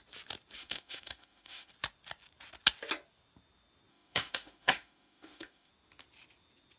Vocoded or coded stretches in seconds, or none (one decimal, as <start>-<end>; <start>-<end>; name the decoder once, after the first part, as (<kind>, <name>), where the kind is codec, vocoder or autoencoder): 0.6-1.7 (autoencoder, DAC-VAE); 3.9-5.7